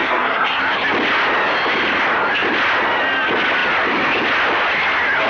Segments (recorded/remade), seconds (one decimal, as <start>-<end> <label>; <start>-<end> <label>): 0.0-0.6 remade; 0.6-5.3 recorded